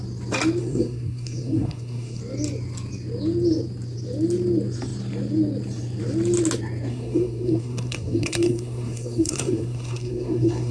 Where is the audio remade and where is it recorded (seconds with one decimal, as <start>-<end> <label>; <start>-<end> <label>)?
0.0-0.6 recorded; 0.6-2.2 remade; 2.2-6.9 recorded; 6.9-10.7 remade

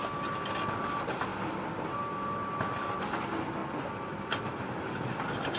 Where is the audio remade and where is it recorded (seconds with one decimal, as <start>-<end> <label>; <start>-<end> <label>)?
0.0-5.6 recorded